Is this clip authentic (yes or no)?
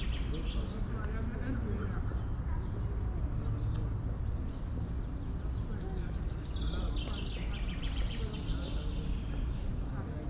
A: yes